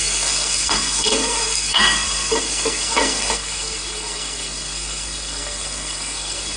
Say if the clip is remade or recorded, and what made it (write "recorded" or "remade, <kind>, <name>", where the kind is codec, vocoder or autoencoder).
remade, codec, SNAC